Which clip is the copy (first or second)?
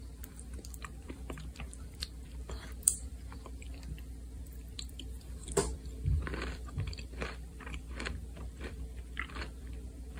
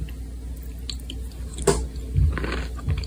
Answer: first